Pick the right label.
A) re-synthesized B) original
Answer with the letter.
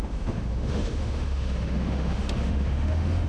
A